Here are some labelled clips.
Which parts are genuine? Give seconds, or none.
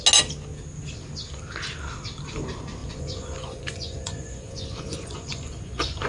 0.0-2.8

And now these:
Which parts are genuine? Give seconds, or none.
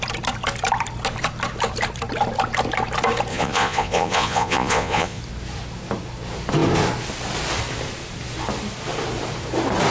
0.0-3.3; 5.2-9.9